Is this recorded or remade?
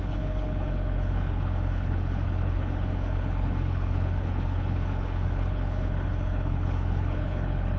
remade